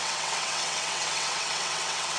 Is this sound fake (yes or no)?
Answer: yes